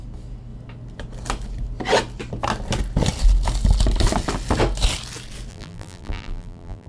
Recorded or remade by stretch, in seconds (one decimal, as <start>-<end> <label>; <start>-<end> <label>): 0.0-5.5 recorded; 5.5-6.9 remade

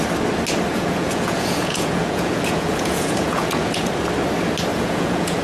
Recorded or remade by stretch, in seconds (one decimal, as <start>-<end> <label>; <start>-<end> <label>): 0.0-0.7 recorded; 0.7-3.9 remade; 3.9-4.7 recorded; 4.7-5.4 remade

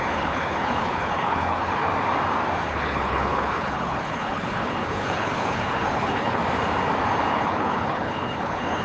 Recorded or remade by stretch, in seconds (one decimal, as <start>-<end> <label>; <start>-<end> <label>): 0.0-1.9 remade; 1.9-2.7 recorded; 2.7-6.4 remade; 6.4-7.3 recorded; 7.3-8.8 remade

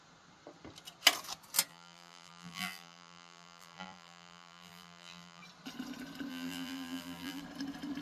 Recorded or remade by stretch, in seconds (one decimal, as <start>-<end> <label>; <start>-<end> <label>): 0.0-1.7 recorded; 1.7-5.4 remade; 5.4-6.3 recorded; 6.3-7.4 remade; 7.4-8.0 recorded

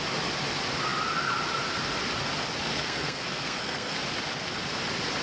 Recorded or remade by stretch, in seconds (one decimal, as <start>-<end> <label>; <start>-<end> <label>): 0.0-2.7 recorded; 2.7-4.0 remade; 4.0-5.2 recorded

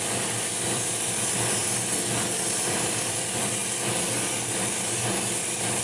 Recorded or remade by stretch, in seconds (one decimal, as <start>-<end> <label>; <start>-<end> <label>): 0.0-1.6 remade; 1.6-2.3 recorded; 2.3-3.6 remade; 3.6-5.8 recorded

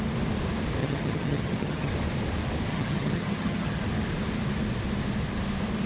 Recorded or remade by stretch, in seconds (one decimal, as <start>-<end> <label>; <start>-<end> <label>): 0.0-0.8 recorded; 0.8-1.9 remade; 1.9-2.7 recorded; 2.7-3.8 remade; 3.8-5.9 recorded

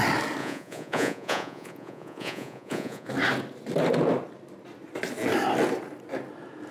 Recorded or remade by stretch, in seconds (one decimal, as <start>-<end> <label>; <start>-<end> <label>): 0.0-0.4 recorded; 0.4-3.1 remade; 3.1-6.7 recorded